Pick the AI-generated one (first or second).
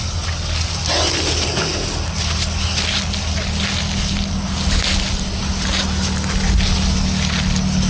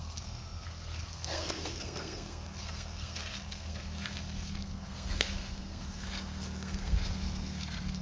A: second